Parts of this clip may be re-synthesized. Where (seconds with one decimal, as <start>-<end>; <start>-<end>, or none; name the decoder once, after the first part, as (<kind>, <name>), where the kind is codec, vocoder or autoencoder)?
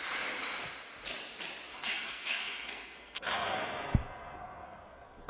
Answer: 1.7-5.3 (codec, SNAC)